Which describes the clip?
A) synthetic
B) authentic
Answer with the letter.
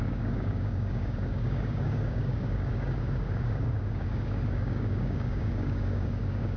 A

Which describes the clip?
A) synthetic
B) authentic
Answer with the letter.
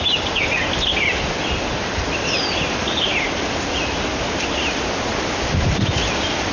B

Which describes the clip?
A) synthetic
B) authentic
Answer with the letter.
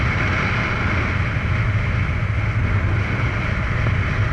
B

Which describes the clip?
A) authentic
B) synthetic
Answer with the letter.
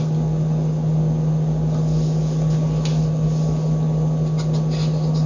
A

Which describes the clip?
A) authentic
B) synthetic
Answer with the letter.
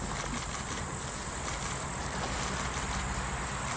A